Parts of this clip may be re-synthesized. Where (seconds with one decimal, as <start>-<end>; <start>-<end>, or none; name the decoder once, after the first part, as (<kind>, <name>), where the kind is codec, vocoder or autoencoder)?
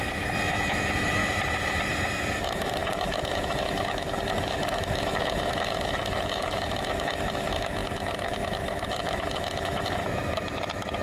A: 0.0-1.2 (autoencoder, DAC-VAE); 2.3-11.0